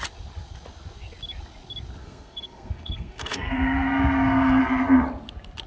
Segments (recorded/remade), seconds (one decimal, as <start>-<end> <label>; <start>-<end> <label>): 0.0-2.0 recorded; 2.0-4.6 remade; 4.6-5.7 recorded